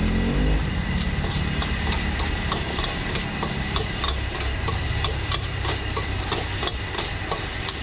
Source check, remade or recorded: recorded